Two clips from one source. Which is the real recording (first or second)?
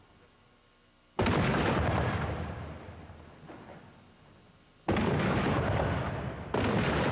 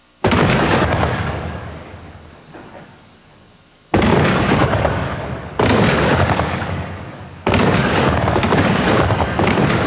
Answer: first